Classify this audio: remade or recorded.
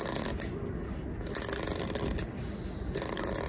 recorded